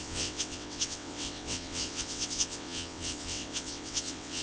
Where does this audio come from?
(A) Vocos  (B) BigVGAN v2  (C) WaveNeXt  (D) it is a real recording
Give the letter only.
C